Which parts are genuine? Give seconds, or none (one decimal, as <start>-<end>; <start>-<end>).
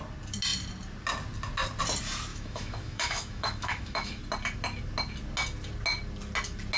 0.0-2.3; 4.2-6.8